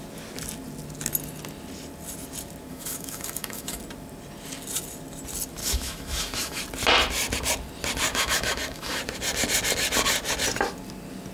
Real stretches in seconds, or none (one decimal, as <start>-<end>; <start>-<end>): 0.0-2.7; 3.8-5.6; 6.6-8.1; 9.0-11.3

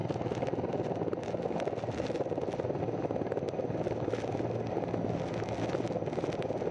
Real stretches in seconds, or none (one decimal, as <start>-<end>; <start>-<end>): 0.0-6.7

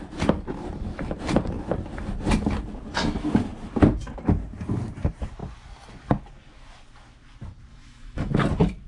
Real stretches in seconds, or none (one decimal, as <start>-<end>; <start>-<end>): 0.0-7.7; 8.3-8.9

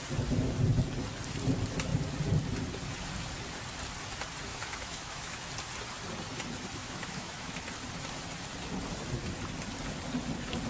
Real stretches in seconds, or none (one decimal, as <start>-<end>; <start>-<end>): 0.0-4.5; 5.5-6.8; 7.6-10.7

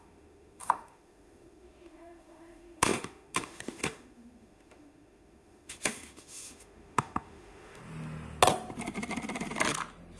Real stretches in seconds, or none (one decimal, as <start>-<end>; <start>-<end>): 7.8-10.2

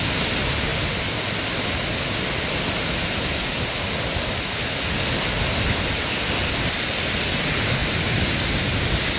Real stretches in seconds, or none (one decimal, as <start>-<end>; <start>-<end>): 0.0-9.2

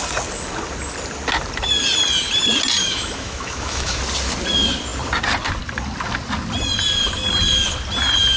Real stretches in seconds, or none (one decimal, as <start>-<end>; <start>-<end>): 0.0-2.8; 4.0-8.4

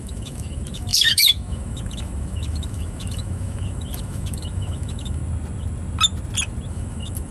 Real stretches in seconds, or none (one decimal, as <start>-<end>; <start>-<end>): 5.2-6.7